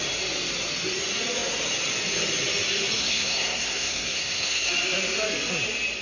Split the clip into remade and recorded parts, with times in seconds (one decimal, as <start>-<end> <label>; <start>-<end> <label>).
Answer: 0.0-3.0 recorded; 3.0-4.7 remade; 4.7-6.0 recorded